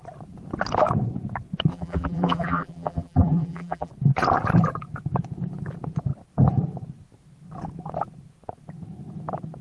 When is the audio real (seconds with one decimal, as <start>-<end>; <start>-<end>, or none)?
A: 0.0-1.7; 3.9-9.6